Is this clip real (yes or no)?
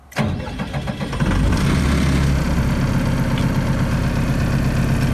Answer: yes